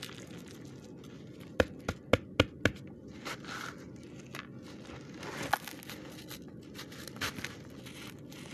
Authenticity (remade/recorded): recorded